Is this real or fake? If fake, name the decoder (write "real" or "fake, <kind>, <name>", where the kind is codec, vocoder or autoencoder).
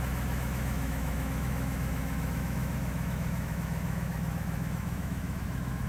fake, autoencoder, DAC-VAE